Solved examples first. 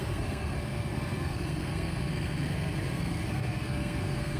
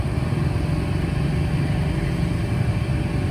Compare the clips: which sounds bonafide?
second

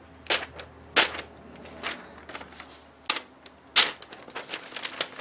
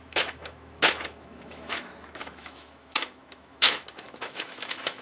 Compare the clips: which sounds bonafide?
first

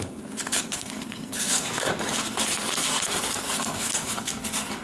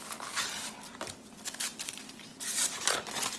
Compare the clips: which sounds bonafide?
second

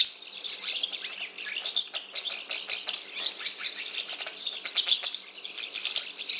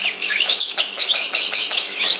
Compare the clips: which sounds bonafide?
first